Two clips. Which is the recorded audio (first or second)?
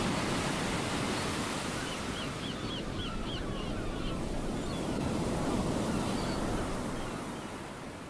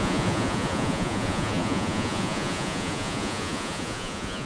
first